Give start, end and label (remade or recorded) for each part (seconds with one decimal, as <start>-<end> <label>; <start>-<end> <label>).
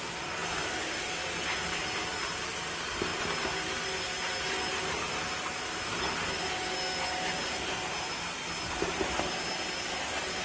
0.0-10.4 recorded